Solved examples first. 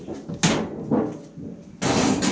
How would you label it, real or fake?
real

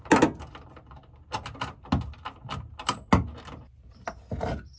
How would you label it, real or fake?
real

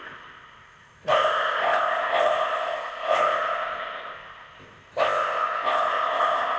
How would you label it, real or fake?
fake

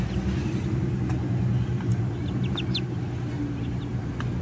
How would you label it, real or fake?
real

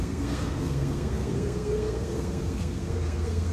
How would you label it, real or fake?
fake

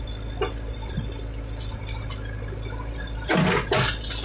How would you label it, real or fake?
real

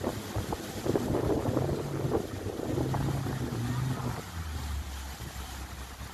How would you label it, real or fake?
real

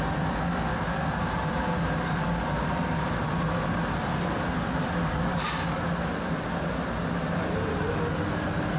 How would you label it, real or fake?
real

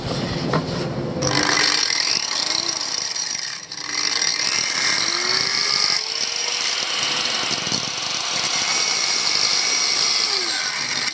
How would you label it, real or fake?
real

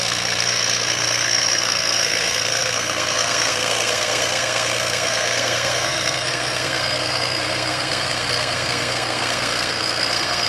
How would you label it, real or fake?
fake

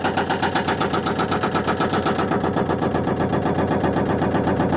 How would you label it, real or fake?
fake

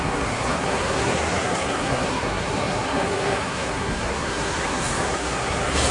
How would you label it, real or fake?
fake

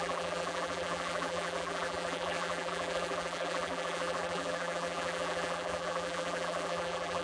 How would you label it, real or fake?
fake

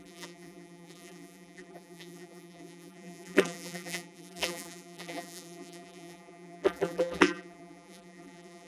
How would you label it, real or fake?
fake